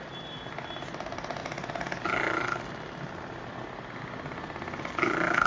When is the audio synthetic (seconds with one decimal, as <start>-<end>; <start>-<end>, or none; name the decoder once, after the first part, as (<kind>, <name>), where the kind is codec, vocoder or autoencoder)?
none